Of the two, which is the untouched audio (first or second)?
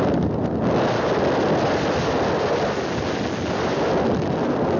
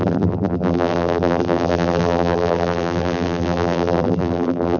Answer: first